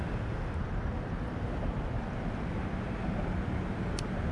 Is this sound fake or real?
real